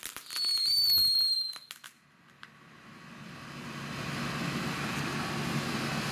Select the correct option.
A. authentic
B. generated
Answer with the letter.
A